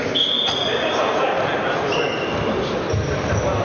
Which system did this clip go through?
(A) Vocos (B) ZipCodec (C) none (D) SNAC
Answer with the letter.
C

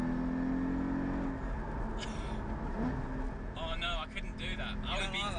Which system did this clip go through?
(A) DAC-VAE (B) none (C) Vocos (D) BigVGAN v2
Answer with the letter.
B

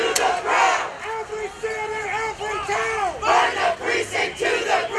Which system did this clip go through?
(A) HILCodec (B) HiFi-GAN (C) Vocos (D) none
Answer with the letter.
D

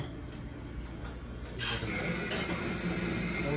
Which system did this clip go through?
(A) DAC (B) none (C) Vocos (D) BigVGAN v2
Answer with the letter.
B